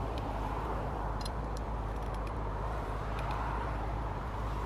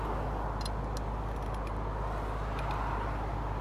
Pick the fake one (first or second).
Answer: first